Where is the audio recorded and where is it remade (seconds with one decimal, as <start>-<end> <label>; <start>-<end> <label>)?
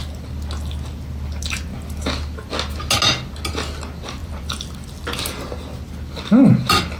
0.0-4.2 recorded; 4.2-5.5 remade; 5.5-7.0 recorded